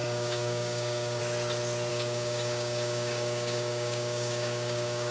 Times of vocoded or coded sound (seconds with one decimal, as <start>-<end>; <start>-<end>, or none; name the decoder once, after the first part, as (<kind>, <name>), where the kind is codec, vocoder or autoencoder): 0.0-1.2 (codec, DAC); 1.9-5.1